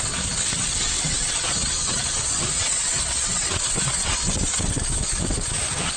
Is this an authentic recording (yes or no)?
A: no